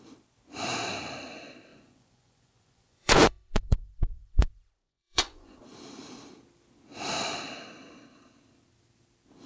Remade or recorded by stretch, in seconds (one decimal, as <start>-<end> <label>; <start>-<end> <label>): 0.0-1.7 recorded; 1.7-5.6 remade; 5.6-9.5 recorded